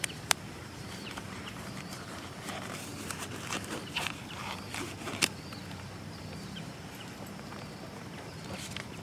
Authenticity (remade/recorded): remade